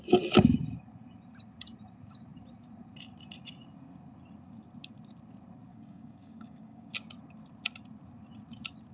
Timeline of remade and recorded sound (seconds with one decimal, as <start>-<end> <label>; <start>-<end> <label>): 0.0-5.7 recorded; 5.7-6.9 remade; 6.9-8.9 recorded

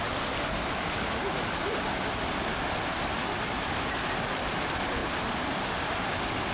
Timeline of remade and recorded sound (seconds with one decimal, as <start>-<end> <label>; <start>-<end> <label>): 0.0-6.5 recorded